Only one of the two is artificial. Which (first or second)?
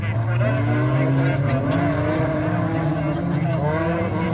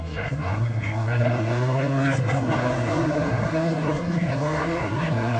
second